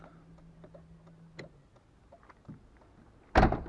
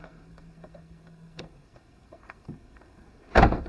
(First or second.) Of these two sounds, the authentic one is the first